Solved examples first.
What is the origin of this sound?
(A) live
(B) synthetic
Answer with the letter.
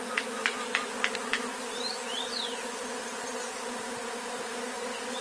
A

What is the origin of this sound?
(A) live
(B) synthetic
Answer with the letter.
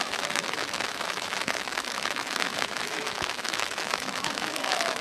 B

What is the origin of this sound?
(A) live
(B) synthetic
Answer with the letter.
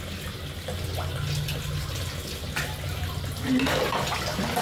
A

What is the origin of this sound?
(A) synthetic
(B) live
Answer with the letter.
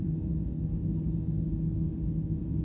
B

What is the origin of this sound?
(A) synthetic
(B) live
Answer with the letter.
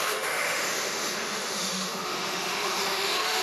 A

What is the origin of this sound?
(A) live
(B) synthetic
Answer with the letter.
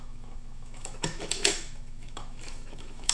B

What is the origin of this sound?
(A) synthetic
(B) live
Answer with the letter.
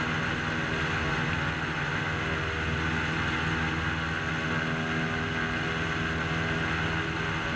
B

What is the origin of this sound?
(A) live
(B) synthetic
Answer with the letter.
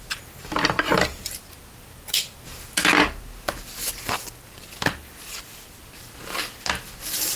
A